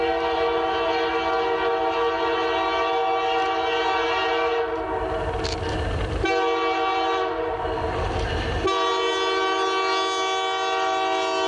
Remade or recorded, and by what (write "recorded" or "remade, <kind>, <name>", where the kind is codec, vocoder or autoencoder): recorded